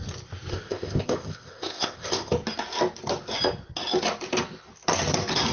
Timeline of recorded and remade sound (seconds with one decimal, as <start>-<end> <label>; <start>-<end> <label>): 0.0-0.5 recorded; 0.5-2.3 remade; 2.3-5.5 recorded